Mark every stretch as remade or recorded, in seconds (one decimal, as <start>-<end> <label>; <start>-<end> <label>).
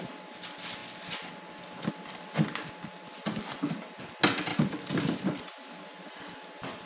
0.0-6.9 recorded